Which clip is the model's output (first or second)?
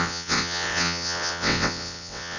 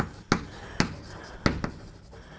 first